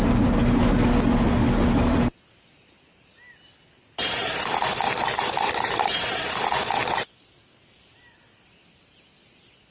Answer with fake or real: real